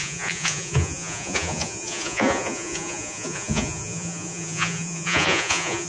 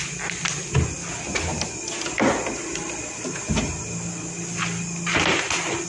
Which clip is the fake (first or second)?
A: first